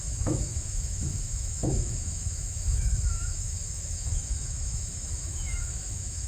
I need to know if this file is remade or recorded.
remade